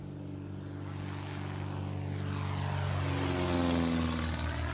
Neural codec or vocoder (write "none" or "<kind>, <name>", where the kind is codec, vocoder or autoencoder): none